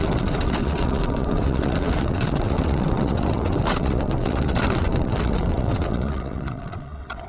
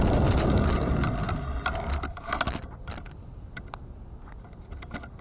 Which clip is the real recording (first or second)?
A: second